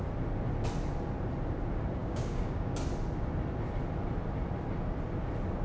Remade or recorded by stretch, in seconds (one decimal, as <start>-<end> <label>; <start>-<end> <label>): 0.0-2.0 recorded; 2.0-2.8 remade; 2.8-5.6 recorded